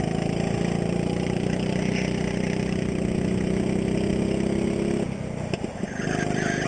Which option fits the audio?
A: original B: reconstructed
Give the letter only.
A